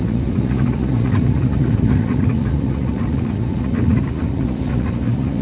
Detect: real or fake fake